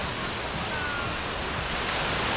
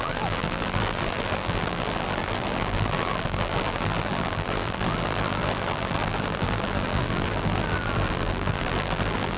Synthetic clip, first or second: second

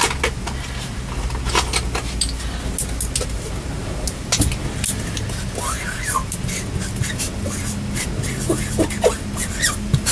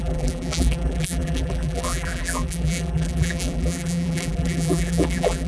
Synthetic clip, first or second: second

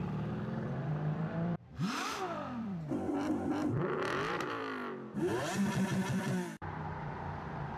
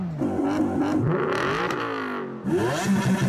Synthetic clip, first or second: first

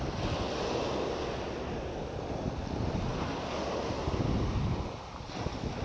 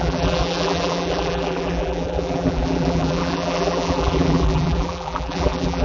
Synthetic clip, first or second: second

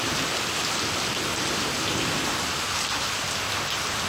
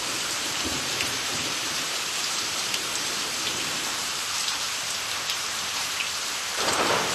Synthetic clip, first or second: second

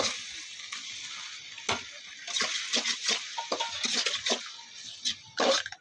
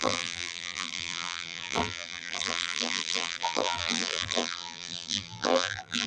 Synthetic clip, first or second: second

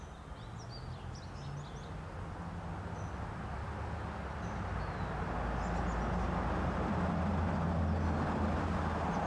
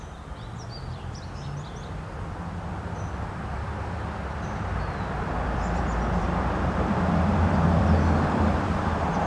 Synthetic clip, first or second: second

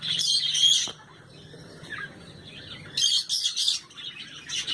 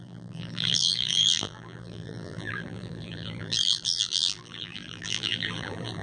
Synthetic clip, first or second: second